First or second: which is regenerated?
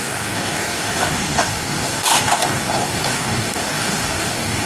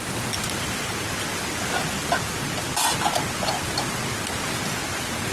first